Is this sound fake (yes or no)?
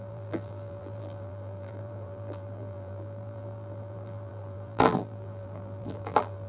yes